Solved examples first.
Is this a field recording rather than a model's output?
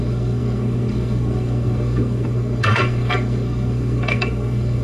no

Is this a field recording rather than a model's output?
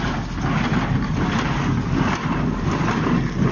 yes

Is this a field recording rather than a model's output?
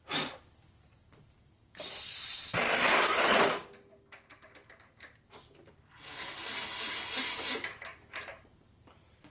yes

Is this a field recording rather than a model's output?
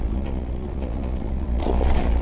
no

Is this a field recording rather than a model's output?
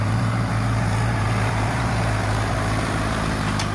no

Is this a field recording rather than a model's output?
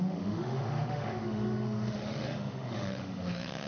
no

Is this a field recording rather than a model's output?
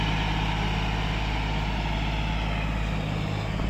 yes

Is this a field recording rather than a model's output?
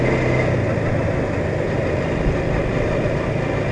yes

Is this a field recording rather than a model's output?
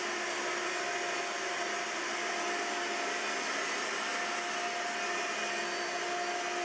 yes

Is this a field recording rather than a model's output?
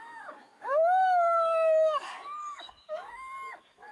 no